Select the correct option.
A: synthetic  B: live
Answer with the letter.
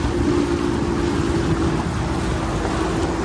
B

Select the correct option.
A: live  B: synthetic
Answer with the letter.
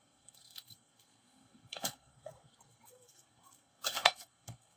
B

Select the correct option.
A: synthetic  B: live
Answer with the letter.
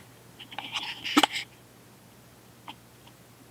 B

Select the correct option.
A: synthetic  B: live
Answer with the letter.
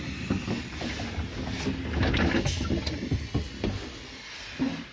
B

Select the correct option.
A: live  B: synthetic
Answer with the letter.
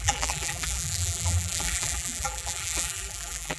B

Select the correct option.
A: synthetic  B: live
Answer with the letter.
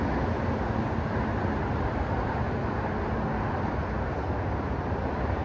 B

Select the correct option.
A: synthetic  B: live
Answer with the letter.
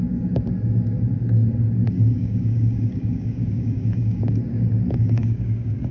A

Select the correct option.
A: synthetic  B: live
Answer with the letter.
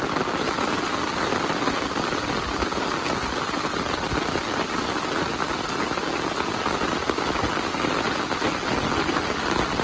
B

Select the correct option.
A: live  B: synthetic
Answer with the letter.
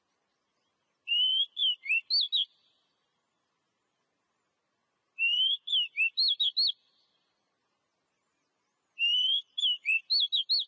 A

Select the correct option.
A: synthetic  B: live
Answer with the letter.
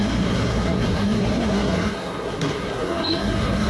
A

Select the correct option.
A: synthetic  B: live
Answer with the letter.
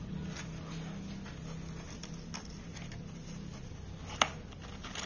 B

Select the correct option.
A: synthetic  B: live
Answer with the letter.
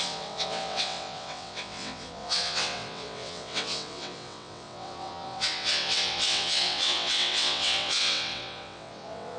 A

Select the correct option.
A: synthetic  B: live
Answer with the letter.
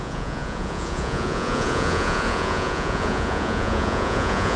A